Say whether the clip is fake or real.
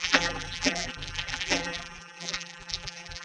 fake